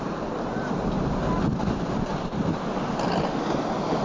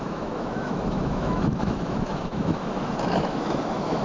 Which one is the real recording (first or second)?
first